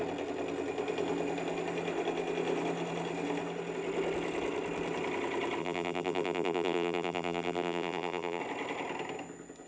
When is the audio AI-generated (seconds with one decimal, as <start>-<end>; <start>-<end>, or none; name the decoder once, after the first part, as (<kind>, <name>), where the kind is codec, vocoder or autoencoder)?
5.6-8.4 (vocoder, BigVGAN v2)